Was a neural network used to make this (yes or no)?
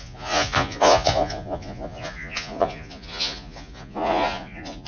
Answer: yes